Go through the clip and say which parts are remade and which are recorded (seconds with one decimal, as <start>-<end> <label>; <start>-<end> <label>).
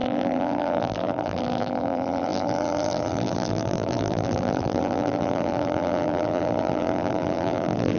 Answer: 0.0-8.0 remade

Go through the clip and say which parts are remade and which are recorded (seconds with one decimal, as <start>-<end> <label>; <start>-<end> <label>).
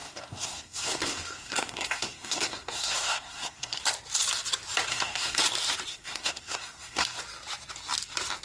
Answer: 0.0-3.8 remade; 3.8-4.9 recorded; 4.9-5.4 remade; 5.4-5.9 recorded; 5.9-7.2 remade; 7.2-8.4 recorded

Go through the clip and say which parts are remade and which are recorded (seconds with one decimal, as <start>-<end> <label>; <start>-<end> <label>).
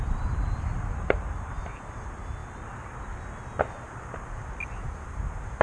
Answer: 0.0-0.9 recorded; 0.9-1.6 remade; 1.6-5.6 recorded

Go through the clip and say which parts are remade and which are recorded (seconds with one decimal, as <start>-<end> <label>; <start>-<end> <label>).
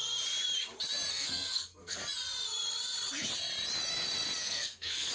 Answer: 0.0-1.1 recorded; 1.1-2.0 remade; 2.0-4.4 recorded; 4.4-5.1 remade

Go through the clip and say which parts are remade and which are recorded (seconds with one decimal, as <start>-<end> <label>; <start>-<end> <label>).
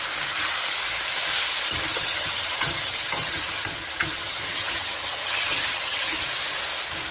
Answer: 0.0-1.9 recorded; 1.9-6.2 remade; 6.2-7.1 recorded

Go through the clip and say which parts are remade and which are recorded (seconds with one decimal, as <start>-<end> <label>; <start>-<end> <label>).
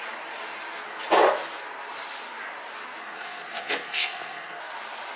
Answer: 0.0-3.0 recorded; 3.0-4.6 remade; 4.6-5.2 recorded